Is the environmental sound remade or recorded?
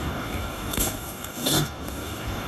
remade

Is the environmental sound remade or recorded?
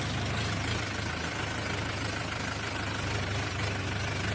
recorded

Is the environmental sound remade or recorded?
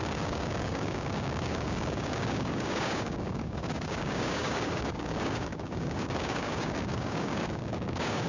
remade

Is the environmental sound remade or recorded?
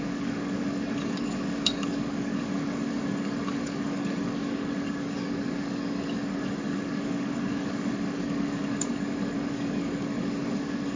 remade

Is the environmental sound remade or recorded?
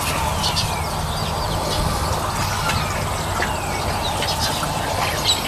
recorded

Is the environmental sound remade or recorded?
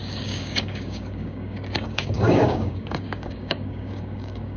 remade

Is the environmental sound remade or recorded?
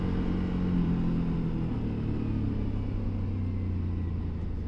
recorded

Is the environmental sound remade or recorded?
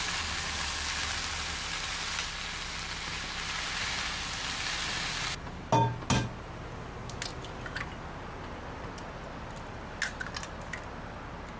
recorded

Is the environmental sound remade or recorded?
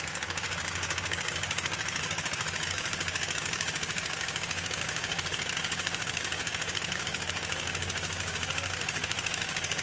remade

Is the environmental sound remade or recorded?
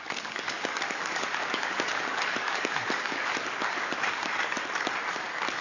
remade